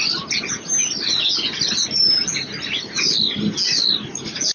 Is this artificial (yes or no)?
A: no